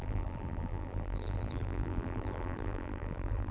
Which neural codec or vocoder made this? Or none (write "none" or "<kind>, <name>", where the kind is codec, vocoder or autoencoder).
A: vocoder, BigVGAN v2